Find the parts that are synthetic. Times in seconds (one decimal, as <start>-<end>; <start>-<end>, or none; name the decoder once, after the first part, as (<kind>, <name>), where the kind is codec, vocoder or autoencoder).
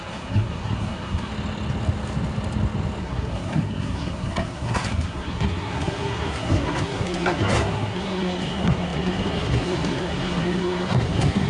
0.0-1.3 (codec, SNAC); 3.0-11.5